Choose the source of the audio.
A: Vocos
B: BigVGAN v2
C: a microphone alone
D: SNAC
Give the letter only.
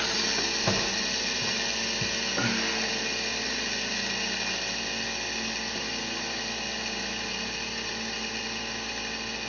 C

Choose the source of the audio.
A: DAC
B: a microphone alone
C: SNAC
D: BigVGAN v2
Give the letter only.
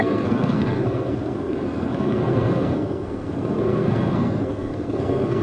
C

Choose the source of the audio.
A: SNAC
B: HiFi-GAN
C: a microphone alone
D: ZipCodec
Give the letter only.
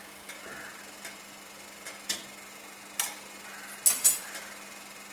C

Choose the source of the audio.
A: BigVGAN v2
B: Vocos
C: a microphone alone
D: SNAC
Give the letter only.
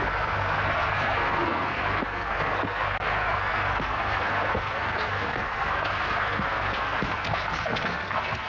D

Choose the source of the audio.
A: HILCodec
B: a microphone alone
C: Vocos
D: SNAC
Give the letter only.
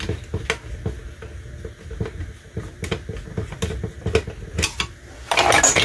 B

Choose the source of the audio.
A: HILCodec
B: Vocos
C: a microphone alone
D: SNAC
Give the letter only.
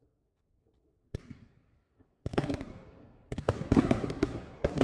D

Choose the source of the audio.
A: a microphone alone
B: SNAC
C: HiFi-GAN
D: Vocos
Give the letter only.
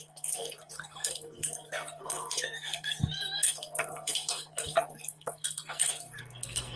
B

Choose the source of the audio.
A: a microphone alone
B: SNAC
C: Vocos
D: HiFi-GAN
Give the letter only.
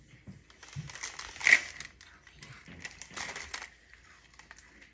A